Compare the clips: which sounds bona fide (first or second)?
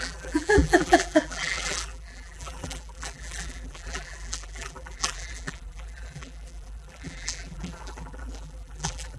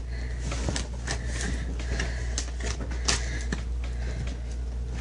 second